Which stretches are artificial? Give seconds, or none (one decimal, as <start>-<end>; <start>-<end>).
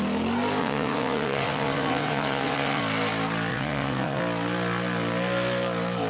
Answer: 0.6-2.8; 3.5-4.2